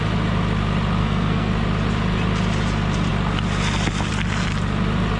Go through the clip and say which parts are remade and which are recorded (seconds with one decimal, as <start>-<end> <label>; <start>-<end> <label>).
0.0-1.0 recorded; 1.0-1.5 remade; 1.5-5.2 recorded

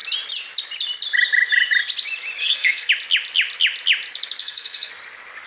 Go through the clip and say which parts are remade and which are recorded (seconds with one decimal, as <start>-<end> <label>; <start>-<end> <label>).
0.0-2.4 recorded; 2.4-2.9 remade; 2.9-4.4 recorded; 4.4-4.9 remade; 4.9-5.5 recorded